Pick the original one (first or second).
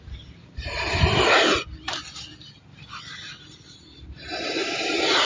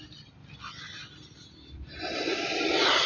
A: second